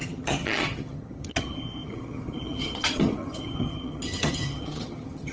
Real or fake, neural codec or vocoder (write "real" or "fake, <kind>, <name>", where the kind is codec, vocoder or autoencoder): fake, vocoder, HiFi-GAN